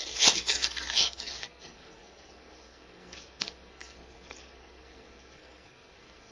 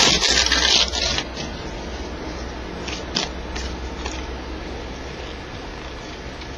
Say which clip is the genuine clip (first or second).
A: second